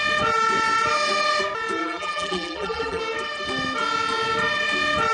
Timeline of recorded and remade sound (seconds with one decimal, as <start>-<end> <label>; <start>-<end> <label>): 0.0-1.8 recorded; 1.8-3.0 remade; 3.0-5.1 recorded